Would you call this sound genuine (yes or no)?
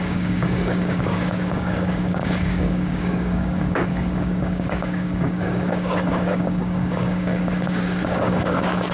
no